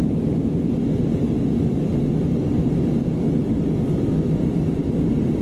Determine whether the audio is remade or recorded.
recorded